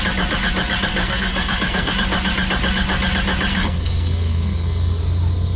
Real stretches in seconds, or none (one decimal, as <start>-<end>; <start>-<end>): 0.0-0.9; 1.9-3.5; 5.0-5.6